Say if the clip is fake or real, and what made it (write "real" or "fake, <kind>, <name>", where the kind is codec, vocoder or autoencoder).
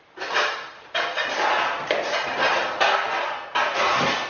real